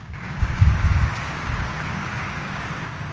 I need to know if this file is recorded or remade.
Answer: remade